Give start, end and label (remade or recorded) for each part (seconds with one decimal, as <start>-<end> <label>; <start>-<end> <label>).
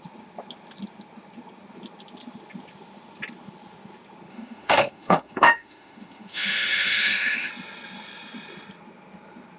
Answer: 0.0-4.3 recorded; 4.3-7.5 remade; 7.5-9.6 recorded